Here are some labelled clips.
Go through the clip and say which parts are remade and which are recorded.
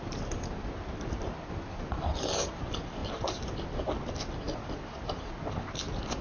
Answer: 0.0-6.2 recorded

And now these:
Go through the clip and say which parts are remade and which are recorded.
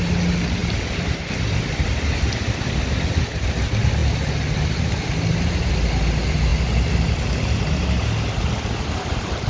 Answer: 0.0-9.5 recorded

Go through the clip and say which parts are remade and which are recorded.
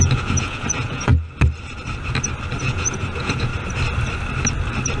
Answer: 0.0-1.1 remade; 1.1-2.6 recorded; 2.6-3.5 remade; 3.5-5.0 recorded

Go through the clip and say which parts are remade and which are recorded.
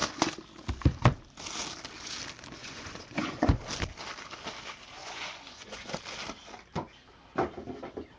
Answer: 0.0-2.6 recorded; 2.6-3.6 remade; 3.6-5.0 recorded; 5.0-6.0 remade; 6.0-8.2 recorded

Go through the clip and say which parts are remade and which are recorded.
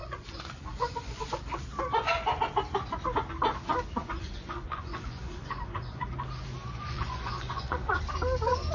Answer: 0.0-1.3 remade; 1.3-4.0 recorded; 4.0-6.1 remade; 6.1-6.6 recorded; 6.6-8.0 remade; 8.0-8.7 recorded